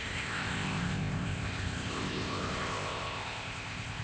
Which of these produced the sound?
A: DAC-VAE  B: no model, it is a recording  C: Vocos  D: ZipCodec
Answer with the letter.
D